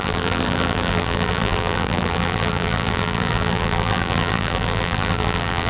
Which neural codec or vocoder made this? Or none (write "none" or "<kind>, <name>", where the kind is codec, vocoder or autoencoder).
vocoder, BigVGAN v2